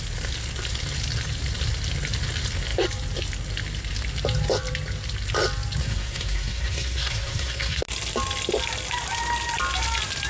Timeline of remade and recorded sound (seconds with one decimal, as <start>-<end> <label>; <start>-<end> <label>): 0.0-5.8 recorded; 5.8-7.8 remade; 7.8-10.3 recorded